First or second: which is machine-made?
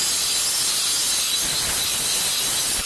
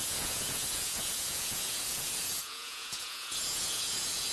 second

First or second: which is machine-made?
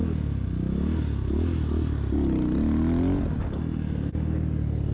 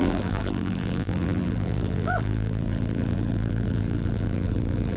second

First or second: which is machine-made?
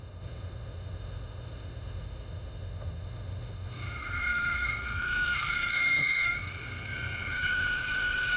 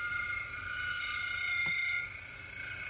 first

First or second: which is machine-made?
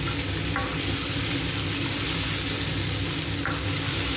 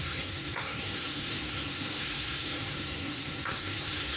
second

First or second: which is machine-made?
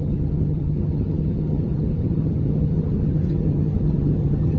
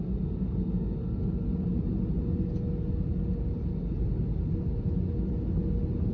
first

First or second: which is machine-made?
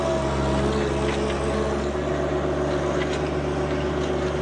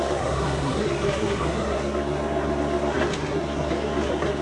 second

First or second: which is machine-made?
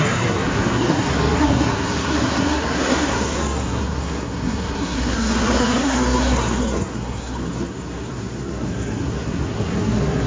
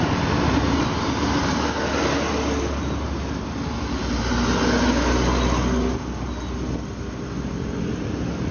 first